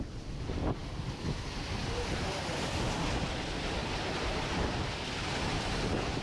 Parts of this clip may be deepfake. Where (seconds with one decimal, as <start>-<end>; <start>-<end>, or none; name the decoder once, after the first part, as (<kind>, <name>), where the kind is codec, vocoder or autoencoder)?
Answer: 0.0-0.8 (vocoder, BigVGAN v2); 1.3-3.8; 4.5-6.2